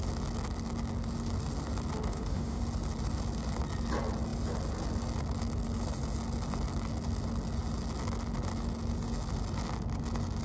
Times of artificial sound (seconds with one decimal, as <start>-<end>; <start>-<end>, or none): 2.1-2.6